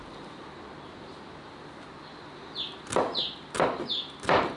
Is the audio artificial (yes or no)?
no